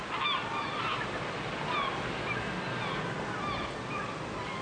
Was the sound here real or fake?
real